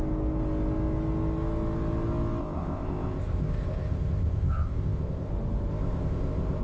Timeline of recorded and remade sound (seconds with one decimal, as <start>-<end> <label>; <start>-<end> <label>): 0.0-2.4 recorded; 2.4-5.3 remade; 5.3-5.7 recorded; 5.7-6.6 remade